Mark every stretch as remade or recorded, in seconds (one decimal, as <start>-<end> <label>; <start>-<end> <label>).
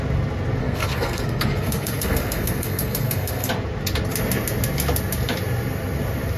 0.0-0.6 recorded; 0.6-3.5 remade; 3.5-6.4 recorded